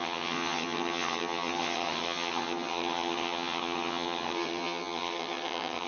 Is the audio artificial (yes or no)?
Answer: yes